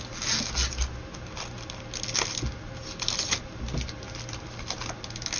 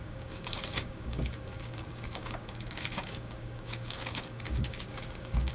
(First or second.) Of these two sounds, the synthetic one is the second